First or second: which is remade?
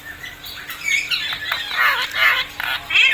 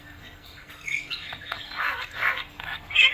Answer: second